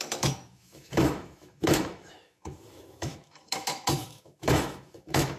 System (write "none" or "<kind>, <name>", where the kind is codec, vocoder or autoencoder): autoencoder, DAC-VAE